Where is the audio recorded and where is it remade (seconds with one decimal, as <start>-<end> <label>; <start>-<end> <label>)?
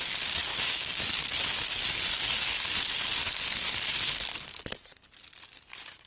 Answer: 0.0-0.5 recorded; 0.5-1.0 remade; 1.0-6.1 recorded